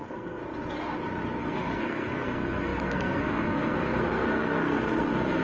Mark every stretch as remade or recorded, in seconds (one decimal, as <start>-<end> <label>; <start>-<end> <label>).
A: 0.0-0.4 remade; 0.4-1.4 recorded; 1.4-5.4 remade